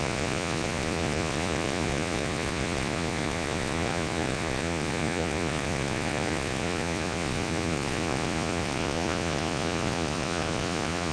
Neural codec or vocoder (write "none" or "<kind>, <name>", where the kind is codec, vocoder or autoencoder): vocoder, Vocos